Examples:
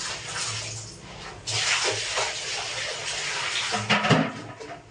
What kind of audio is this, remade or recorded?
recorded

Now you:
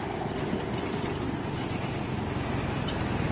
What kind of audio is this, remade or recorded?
recorded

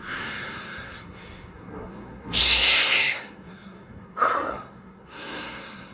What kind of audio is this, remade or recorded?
remade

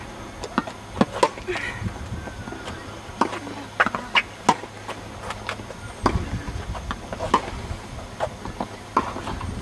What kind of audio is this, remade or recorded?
recorded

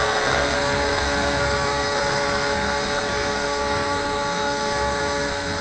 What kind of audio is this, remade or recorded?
remade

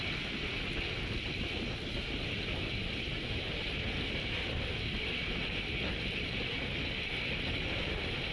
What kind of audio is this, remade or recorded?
recorded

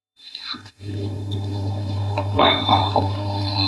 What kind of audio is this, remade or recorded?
remade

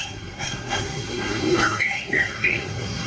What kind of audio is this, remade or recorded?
remade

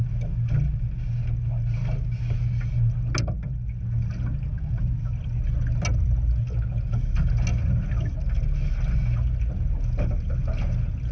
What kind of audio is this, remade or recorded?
recorded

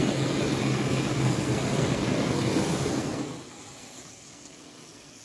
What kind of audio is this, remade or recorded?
remade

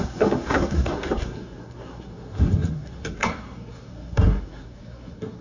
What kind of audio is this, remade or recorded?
remade